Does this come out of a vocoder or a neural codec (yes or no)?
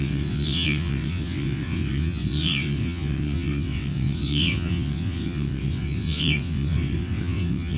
yes